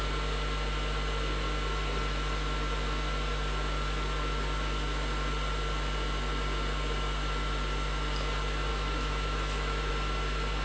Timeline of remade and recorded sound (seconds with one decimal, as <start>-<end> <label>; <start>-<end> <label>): 0.0-8.7 recorded; 8.7-9.9 remade; 9.9-10.6 recorded